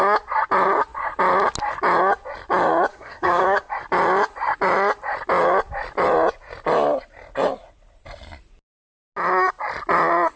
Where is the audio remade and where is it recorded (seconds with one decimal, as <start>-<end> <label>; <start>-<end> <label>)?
0.0-2.9 recorded; 2.9-3.7 remade; 3.7-10.4 recorded